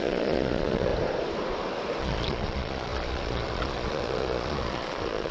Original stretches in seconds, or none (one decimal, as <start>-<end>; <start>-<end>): 0.9-2.0

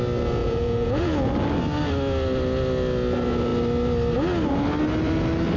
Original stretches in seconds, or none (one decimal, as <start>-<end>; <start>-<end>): 0.0-0.4; 1.3-5.6

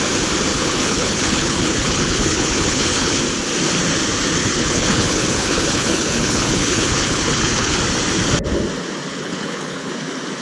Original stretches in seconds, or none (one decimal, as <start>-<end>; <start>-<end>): 0.0-0.5; 3.2-4.4; 7.8-9.1; 9.9-10.4